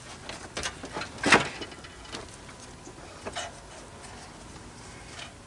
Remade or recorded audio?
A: recorded